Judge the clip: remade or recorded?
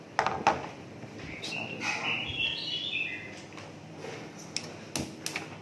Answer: recorded